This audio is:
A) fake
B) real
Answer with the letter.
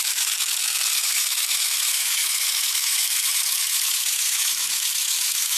A